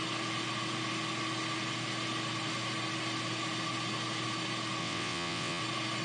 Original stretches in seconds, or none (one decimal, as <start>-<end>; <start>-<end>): 0.0-4.8; 5.6-6.0